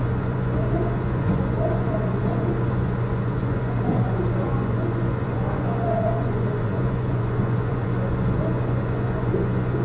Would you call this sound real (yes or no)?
no